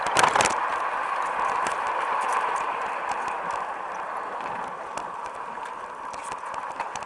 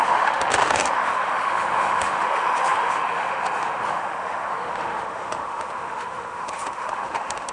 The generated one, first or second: second